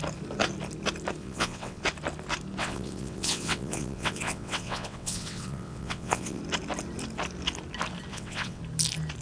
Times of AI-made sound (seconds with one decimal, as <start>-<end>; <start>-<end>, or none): 1.2-1.8; 2.6-6.4; 8.1-8.6